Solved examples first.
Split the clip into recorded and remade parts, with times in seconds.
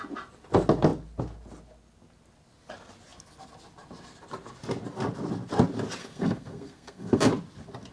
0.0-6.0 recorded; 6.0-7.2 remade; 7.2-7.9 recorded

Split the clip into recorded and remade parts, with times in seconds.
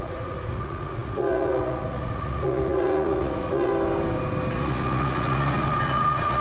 0.0-3.7 remade; 3.7-4.5 recorded; 4.5-6.4 remade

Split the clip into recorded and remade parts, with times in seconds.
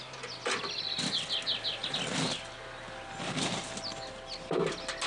0.0-5.1 recorded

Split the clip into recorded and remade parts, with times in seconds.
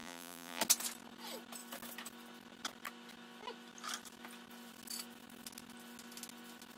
0.0-0.6 remade; 0.6-6.8 recorded